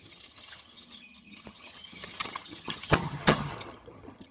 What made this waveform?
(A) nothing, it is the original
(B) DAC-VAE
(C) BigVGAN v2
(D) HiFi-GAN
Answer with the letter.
D